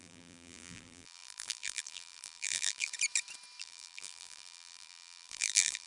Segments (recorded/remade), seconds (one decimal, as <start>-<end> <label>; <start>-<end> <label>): 0.0-2.9 remade; 2.9-3.6 recorded; 3.6-5.9 remade

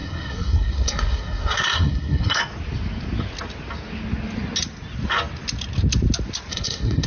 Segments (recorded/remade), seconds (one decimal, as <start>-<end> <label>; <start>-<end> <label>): 0.0-2.4 remade; 2.4-6.5 recorded; 6.5-7.1 remade